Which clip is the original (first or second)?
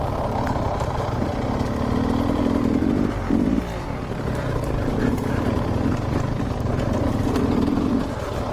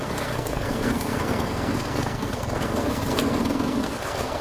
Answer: first